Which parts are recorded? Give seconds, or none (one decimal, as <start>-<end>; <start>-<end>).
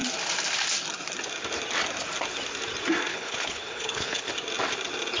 0.0-3.1; 4.3-5.2